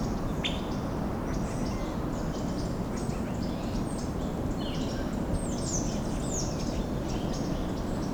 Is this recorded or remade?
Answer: recorded